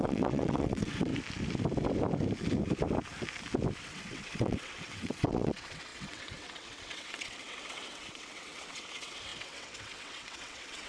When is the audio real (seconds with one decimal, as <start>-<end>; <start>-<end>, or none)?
1.1-3.8